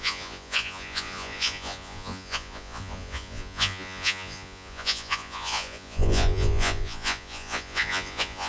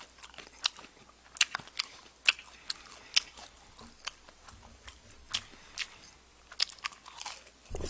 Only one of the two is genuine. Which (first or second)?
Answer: second